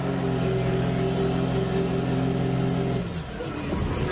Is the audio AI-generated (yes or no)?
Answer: no